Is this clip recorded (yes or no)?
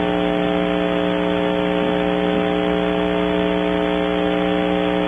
yes